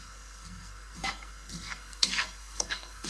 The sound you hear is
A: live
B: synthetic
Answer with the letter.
B